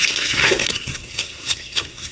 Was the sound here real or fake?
fake